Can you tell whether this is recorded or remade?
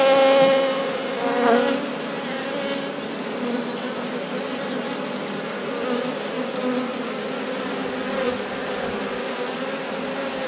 recorded